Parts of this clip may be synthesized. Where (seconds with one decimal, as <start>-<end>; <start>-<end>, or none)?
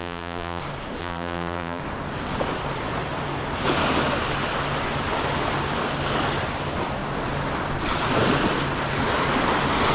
0.0-0.6; 1.0-1.8